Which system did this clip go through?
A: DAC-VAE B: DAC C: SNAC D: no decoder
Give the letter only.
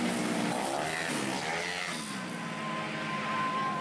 D